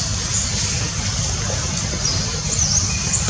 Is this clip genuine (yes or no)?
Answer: yes